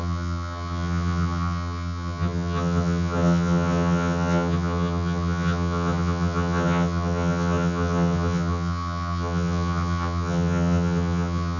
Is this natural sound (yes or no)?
no